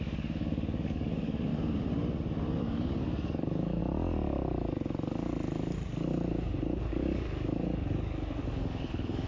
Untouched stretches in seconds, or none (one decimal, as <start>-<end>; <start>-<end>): 1.5-2.6; 3.8-6.8